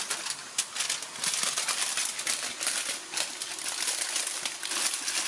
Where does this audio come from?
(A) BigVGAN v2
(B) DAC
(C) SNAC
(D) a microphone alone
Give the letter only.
D